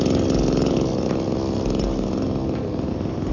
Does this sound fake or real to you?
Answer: real